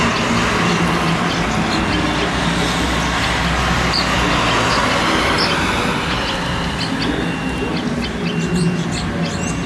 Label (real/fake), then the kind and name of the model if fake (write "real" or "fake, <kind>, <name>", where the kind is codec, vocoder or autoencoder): real